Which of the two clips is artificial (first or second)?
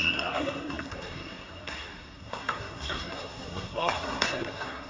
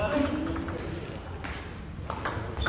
first